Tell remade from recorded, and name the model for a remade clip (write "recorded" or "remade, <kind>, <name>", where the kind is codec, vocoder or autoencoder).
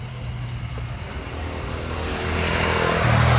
recorded